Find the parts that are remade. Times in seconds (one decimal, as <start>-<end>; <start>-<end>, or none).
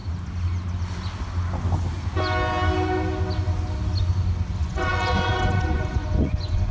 4.6-6.7